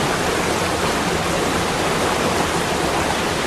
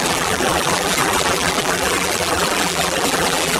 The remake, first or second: second